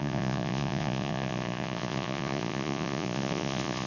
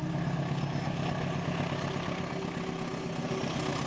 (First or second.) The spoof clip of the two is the first